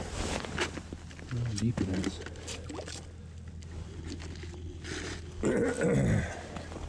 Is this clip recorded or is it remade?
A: recorded